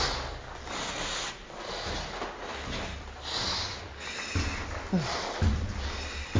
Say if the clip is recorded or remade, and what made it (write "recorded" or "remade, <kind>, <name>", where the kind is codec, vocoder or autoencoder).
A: recorded